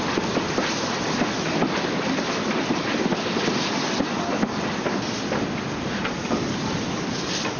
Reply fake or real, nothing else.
real